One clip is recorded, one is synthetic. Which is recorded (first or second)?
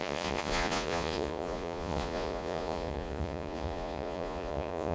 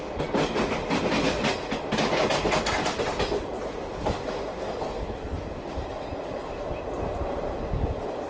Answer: second